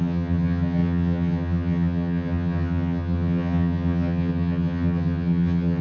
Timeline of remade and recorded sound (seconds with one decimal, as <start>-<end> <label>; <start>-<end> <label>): 0.0-5.8 remade